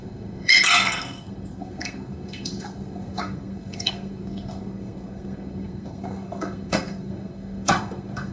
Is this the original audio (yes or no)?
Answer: no